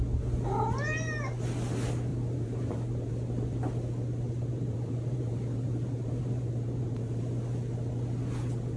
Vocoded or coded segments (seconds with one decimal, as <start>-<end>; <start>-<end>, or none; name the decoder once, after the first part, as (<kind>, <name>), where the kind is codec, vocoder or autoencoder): 2.1-3.1 (vocoder, BigVGAN v2); 4.4-7.2